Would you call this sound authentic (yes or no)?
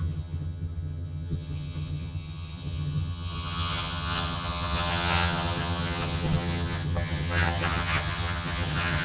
no